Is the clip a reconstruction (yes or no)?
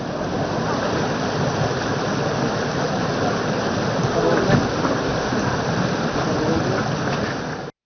no